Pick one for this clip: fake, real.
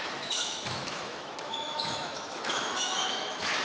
fake